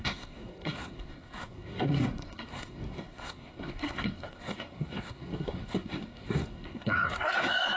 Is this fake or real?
fake